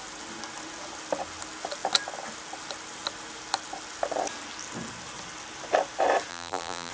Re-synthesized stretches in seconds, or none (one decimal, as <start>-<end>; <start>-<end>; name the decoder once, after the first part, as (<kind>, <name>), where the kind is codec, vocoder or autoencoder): 6.3-6.9 (vocoder, BigVGAN v2)